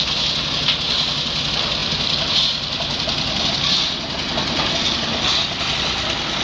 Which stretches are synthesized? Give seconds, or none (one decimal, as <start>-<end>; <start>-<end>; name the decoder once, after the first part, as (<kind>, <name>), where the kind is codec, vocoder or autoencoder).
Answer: none